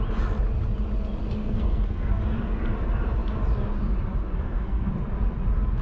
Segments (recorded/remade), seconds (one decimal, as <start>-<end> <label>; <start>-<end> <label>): 0.0-1.2 recorded; 1.2-2.6 remade; 2.6-4.3 recorded; 4.3-4.9 remade; 4.9-5.8 recorded